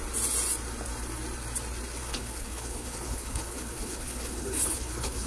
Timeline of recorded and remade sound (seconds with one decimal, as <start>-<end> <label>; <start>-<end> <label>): 0.0-2.0 recorded; 2.0-5.3 remade

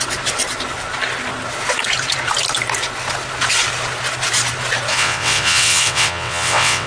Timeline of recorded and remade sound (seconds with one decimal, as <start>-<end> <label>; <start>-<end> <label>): 0.0-4.9 recorded; 4.9-6.9 remade

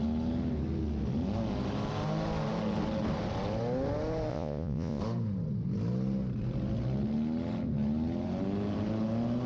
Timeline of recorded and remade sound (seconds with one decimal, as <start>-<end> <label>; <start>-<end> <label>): 0.0-4.3 recorded; 4.3-5.0 remade; 5.0-9.5 recorded

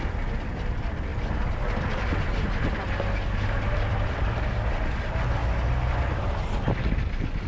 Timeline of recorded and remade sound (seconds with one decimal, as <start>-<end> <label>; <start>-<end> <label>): 0.0-1.1 remade; 1.1-3.7 recorded; 3.7-5.4 remade; 5.4-6.1 recorded; 6.1-7.5 remade

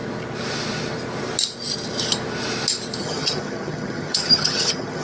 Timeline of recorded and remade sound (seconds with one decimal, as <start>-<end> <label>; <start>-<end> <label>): 0.0-3.0 recorded; 3.0-5.0 remade

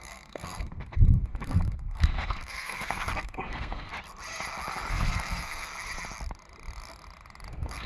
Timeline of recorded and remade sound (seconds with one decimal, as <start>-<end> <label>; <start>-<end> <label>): 0.0-3.9 remade; 3.9-4.9 recorded; 4.9-5.7 remade; 5.7-7.5 recorded; 7.5-7.9 remade

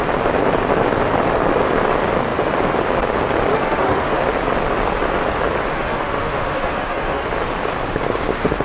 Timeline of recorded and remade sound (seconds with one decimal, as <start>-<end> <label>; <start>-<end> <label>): 0.0-3.5 recorded; 3.5-4.2 remade; 4.2-5.7 recorded; 5.7-7.3 remade; 7.3-8.6 recorded